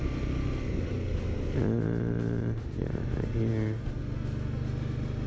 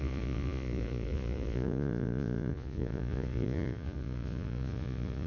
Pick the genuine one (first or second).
first